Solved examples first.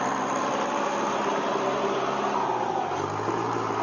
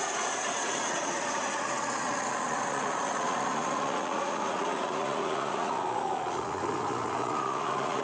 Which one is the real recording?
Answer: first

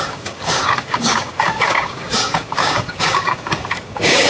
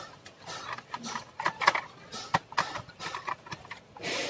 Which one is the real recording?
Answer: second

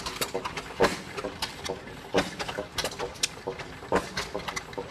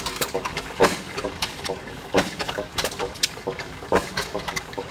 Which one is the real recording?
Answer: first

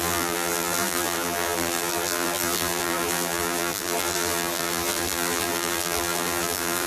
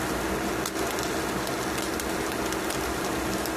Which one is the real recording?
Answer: second